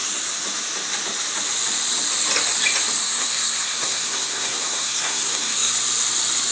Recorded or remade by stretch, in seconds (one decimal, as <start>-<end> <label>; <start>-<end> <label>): 0.0-3.0 recorded; 3.0-5.7 remade; 5.7-6.5 recorded